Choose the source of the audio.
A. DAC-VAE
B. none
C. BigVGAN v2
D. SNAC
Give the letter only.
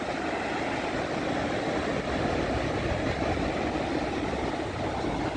B